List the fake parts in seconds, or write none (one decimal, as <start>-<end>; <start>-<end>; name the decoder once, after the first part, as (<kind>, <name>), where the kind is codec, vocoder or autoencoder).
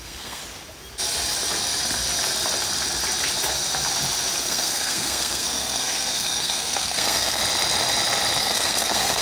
0.0-0.4 (codec, SNAC); 4.4-7.4; 8.4-9.2